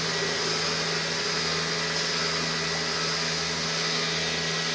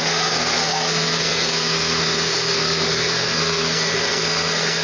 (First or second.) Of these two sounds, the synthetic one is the second